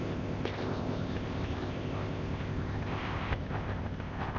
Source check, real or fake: fake